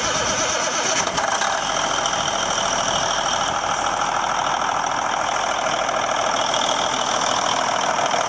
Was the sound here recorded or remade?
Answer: recorded